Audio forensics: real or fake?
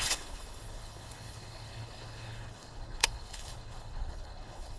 fake